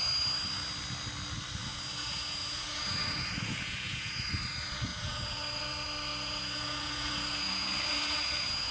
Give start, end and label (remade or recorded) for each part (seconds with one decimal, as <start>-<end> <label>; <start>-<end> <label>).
0.0-1.6 recorded; 1.6-4.3 remade; 4.3-4.9 recorded; 4.9-5.6 remade; 5.6-6.1 recorded; 6.1-8.7 remade